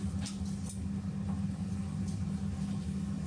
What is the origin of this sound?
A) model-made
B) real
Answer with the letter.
B